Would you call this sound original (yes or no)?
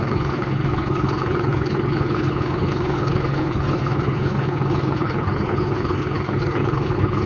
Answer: no